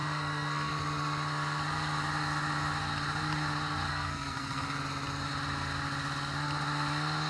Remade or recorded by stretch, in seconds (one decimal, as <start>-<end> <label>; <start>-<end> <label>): 0.0-0.7 remade; 0.7-3.9 recorded; 3.9-4.8 remade; 4.8-7.3 recorded